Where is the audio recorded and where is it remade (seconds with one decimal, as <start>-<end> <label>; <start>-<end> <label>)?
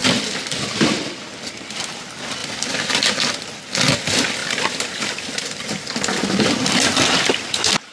0.0-1.1 remade; 1.1-2.4 recorded; 2.4-3.2 remade; 3.2-4.4 recorded; 4.4-7.1 remade; 7.1-7.9 recorded